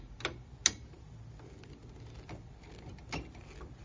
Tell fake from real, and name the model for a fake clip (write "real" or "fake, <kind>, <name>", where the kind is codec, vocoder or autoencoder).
real